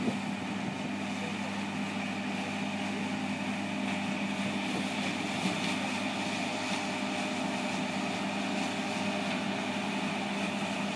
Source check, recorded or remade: recorded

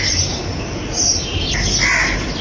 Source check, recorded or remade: remade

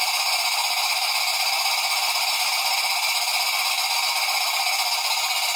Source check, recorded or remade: recorded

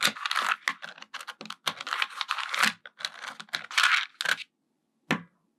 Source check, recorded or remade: recorded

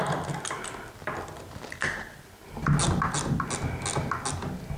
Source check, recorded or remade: recorded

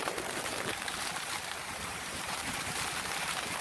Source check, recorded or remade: remade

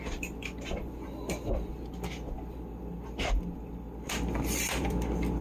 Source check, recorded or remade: remade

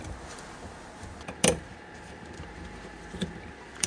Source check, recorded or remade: remade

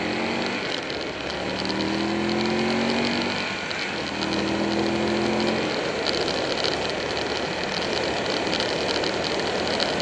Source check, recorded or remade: recorded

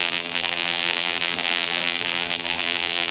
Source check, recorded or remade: remade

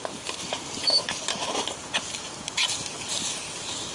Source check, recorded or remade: remade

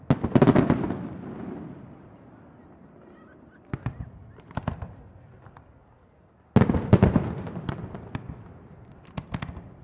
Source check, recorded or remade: recorded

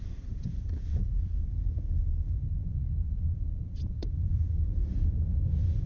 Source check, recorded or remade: remade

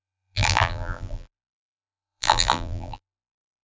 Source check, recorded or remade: remade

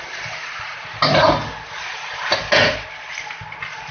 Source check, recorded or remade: recorded